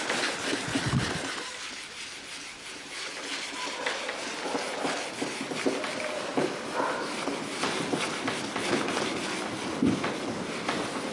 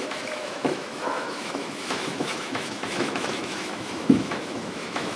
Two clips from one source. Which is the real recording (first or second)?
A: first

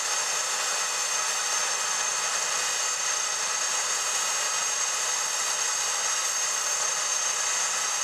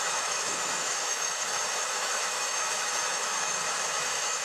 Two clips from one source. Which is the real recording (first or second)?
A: first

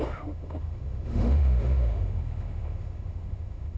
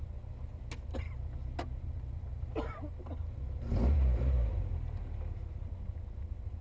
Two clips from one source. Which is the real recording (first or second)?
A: second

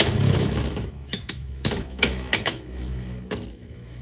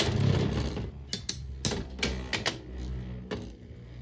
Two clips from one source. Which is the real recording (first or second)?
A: second